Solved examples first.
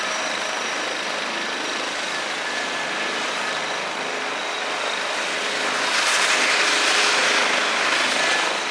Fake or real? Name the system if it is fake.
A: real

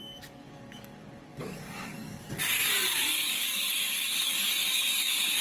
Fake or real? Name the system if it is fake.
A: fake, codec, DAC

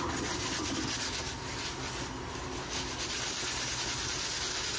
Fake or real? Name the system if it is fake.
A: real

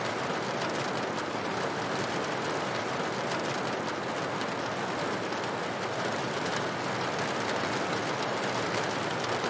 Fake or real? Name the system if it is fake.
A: real